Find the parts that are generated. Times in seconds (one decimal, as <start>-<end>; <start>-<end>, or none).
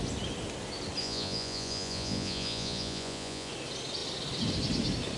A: 1.0-3.5